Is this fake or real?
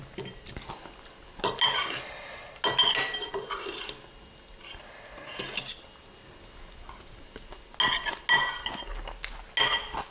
real